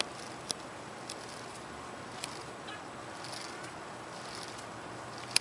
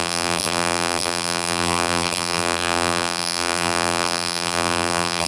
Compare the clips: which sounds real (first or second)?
first